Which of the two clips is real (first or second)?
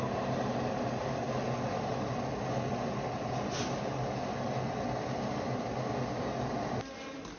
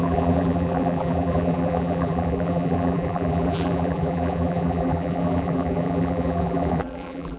first